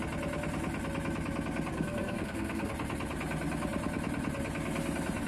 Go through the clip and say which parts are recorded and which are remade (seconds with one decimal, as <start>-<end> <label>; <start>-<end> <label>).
0.0-1.7 recorded; 1.7-2.7 remade; 2.7-5.3 recorded